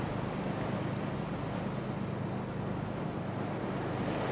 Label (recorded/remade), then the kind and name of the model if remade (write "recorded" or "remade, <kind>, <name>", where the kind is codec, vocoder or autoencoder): recorded